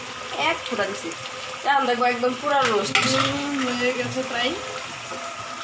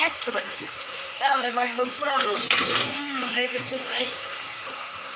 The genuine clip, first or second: first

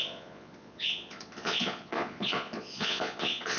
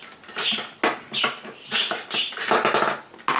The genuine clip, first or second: second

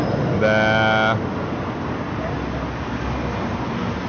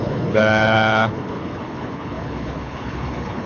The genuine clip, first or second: first